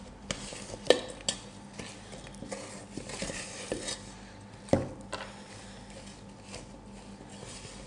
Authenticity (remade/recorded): recorded